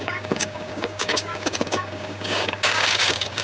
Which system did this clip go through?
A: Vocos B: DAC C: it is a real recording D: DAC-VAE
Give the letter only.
B